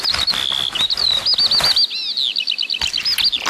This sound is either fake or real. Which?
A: real